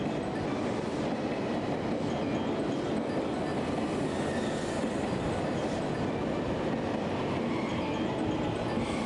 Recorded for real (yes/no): yes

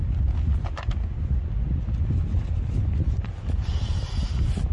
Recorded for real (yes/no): yes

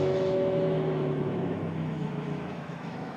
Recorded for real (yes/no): no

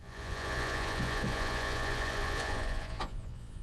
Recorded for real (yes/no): no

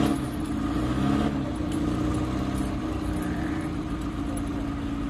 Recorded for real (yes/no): yes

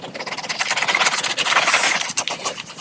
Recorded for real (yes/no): yes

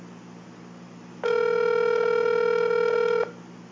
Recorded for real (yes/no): yes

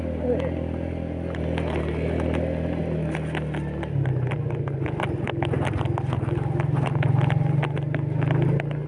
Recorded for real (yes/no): yes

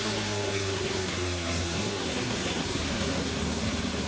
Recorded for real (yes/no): no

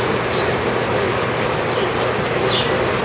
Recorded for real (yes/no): yes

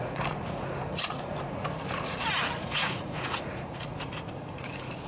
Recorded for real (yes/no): no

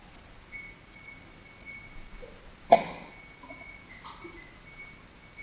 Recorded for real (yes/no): yes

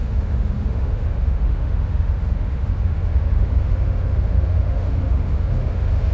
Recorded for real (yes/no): no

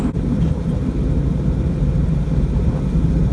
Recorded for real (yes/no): yes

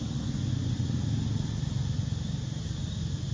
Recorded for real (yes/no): yes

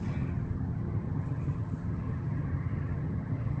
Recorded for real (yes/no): no